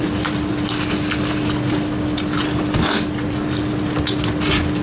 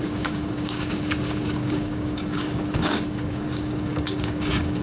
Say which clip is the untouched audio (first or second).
first